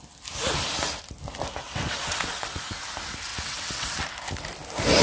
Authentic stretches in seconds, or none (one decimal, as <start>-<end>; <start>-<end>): 0.0-1.6; 2.6-3.3; 3.9-5.0